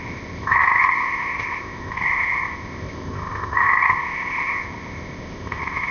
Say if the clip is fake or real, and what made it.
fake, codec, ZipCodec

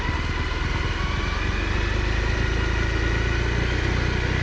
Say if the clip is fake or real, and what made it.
real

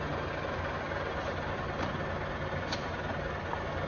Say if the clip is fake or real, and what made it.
real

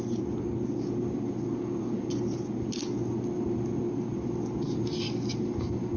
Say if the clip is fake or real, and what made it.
real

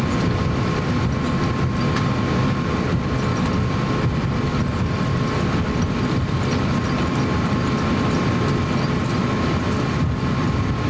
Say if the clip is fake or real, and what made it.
real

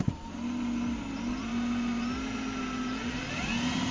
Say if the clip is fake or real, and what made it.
real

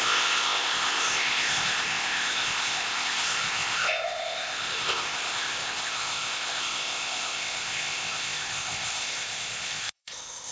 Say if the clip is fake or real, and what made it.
fake, codec, ZipCodec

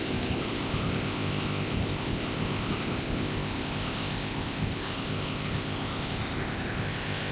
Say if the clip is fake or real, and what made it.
fake, codec, ZipCodec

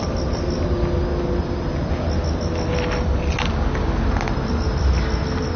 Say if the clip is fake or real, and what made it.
real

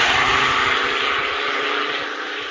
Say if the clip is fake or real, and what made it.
real